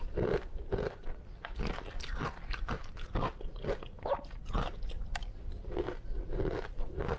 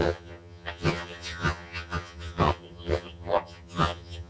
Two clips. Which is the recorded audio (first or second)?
first